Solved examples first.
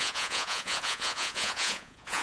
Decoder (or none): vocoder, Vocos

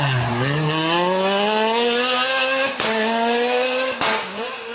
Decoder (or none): none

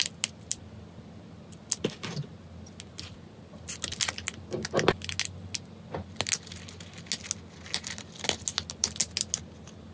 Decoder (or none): none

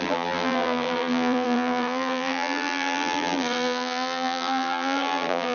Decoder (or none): vocoder, BigVGAN v2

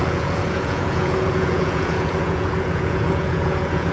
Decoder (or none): vocoder, Vocos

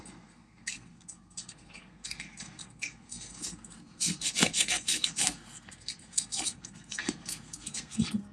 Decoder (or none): codec, SNAC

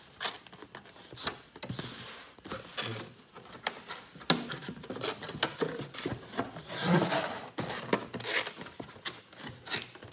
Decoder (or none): none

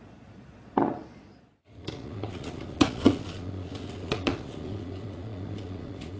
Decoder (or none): vocoder, Vocos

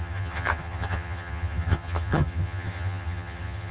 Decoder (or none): vocoder, HiFi-GAN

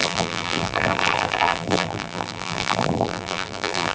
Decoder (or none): vocoder, BigVGAN v2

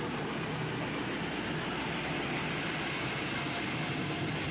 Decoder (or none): none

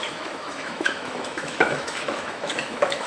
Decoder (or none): autoencoder, DAC-VAE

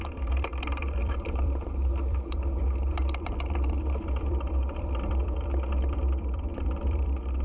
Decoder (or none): vocoder, BigVGAN v2